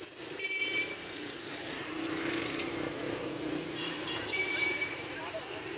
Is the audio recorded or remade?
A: remade